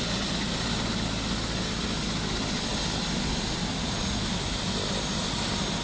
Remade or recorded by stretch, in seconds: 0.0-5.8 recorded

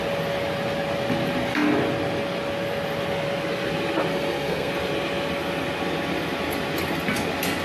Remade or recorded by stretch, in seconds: 0.0-4.1 recorded; 4.1-4.7 remade; 4.7-7.6 recorded